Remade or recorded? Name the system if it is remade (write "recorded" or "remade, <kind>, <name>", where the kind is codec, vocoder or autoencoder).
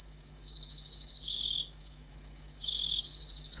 remade, autoencoder, DAC-VAE